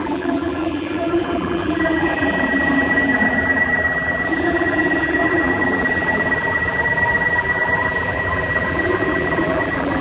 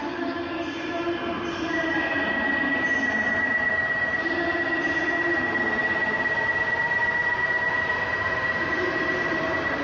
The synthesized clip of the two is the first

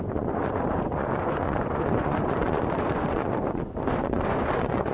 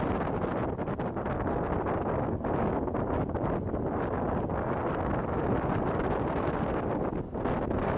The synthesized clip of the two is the first